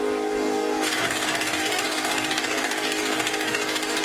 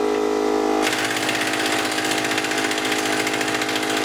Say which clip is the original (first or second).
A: second